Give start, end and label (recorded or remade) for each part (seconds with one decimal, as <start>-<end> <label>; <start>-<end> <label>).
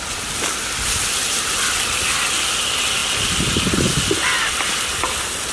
0.0-5.5 recorded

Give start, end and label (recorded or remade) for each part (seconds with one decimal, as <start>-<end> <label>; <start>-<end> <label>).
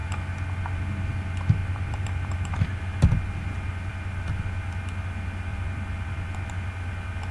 0.0-1.6 recorded; 1.6-2.8 remade; 2.8-5.5 recorded; 5.5-6.5 remade; 6.5-7.3 recorded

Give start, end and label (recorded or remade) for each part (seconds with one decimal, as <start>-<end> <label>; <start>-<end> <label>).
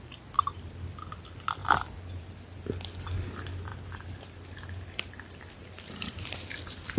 0.0-7.0 recorded